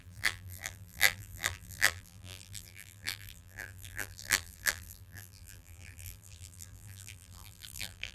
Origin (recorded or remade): remade